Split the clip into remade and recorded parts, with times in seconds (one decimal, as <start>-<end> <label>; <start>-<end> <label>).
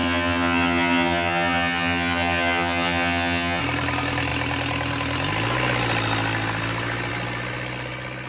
0.0-3.6 remade; 3.6-8.3 recorded